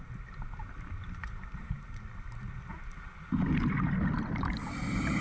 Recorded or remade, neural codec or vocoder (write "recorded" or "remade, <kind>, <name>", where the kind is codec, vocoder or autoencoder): recorded